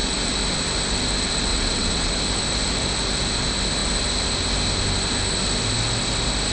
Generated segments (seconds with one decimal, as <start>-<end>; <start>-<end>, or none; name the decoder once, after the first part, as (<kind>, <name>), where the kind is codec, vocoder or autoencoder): 1.5-2.1 (vocoder, WaveNeXt)